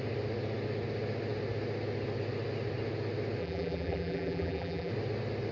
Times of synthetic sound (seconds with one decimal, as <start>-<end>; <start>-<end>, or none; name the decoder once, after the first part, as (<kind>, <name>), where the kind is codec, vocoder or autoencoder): 3.4-4.9 (vocoder, BigVGAN v2)